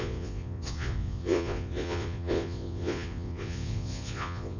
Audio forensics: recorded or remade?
remade